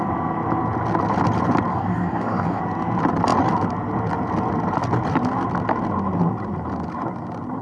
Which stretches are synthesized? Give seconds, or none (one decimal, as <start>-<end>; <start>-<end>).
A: 1.7-2.6